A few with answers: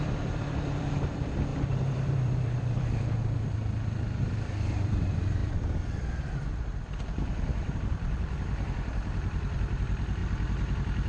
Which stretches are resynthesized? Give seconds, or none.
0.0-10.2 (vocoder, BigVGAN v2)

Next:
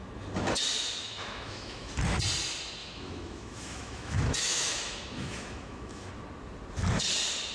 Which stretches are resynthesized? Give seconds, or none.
1.0-1.9 (autoencoder, DAC-VAE); 2.8-6.1

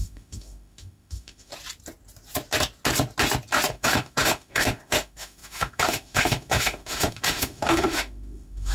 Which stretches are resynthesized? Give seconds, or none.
0.0-1.5 (autoencoder, DAC-VAE); 3.7-8.7